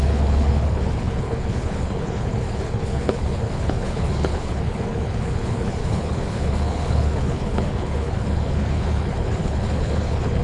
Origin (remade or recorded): remade